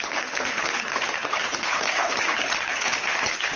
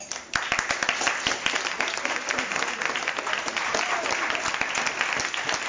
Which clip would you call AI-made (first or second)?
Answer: first